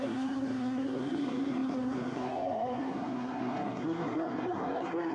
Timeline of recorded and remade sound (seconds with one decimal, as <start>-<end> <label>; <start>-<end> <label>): 0.0-5.1 remade